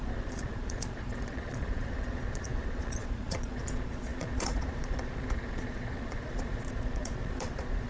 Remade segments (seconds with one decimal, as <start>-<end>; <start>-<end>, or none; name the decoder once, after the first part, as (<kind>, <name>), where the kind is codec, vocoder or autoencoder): 0.0-7.9 (vocoder, Vocos)